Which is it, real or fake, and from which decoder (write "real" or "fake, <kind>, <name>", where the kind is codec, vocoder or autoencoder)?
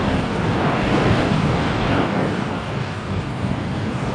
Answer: fake, codec, DAC